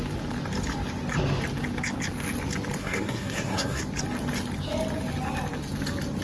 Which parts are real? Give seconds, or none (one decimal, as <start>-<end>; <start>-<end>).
0.0-2.8; 3.8-6.2